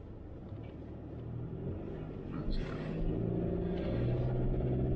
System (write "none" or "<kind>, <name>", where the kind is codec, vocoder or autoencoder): none